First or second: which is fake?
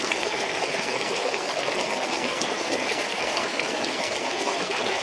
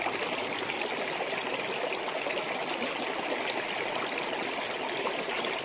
first